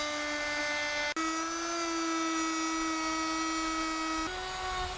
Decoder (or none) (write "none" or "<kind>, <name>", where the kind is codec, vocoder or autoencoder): none